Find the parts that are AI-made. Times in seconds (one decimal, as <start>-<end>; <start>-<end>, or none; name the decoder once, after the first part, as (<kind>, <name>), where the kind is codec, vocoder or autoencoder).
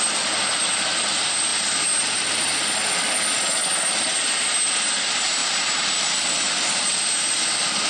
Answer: none